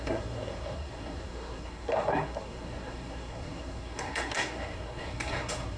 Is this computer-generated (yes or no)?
yes